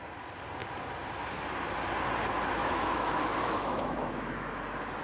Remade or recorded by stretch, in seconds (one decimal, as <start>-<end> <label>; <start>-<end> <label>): 0.0-2.6 recorded; 2.6-4.6 remade; 4.6-5.0 recorded